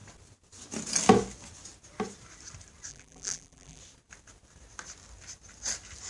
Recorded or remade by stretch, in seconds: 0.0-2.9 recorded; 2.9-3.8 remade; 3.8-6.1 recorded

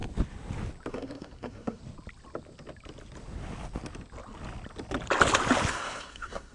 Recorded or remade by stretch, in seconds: 0.0-0.9 recorded; 0.9-1.8 remade; 1.8-5.7 recorded; 5.7-6.5 remade

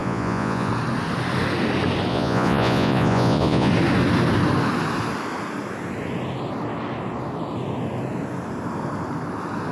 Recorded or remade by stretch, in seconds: 0.0-0.7 remade; 0.7-2.1 recorded; 2.1-3.7 remade; 3.7-9.7 recorded

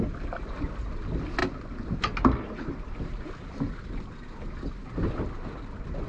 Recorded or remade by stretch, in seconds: 0.0-6.1 recorded

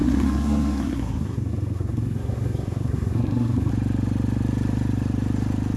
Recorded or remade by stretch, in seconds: 0.0-3.7 remade; 3.7-5.8 recorded

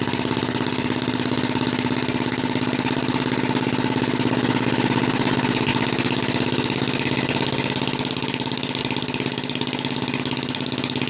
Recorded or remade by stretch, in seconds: 0.0-11.1 recorded

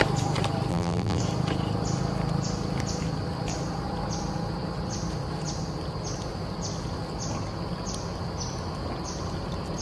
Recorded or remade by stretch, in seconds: 0.0-0.7 recorded; 0.7-1.2 remade; 1.2-9.8 recorded

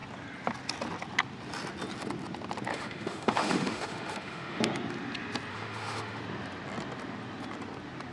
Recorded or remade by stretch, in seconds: 0.0-2.7 recorded; 2.7-4.6 remade; 4.6-5.5 recorded; 5.5-6.2 remade; 6.2-8.1 recorded